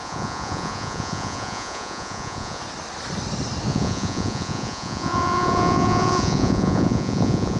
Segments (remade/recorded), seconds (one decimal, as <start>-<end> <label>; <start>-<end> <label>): 0.0-2.6 remade; 2.6-3.7 recorded; 3.7-7.6 remade